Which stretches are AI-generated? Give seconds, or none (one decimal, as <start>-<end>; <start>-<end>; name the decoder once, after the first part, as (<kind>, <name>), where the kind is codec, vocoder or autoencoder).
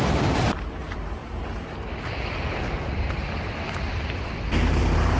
0.0-1.2 (vocoder, BigVGAN v2); 3.6-5.2